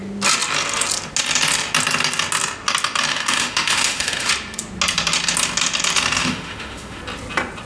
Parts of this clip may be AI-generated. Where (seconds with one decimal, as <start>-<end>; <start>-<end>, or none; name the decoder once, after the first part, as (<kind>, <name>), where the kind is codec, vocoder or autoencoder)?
3.1-4.3 (autoencoder, DAC-VAE); 6.2-7.0